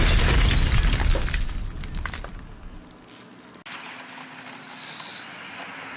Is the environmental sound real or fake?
real